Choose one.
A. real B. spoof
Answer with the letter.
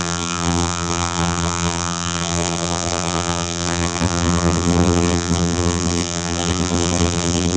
B